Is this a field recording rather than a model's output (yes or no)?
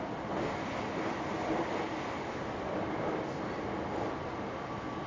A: yes